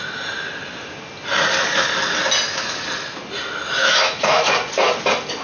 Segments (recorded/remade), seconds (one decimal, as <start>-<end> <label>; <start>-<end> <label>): 0.0-3.8 recorded; 3.8-4.5 remade; 4.5-5.4 recorded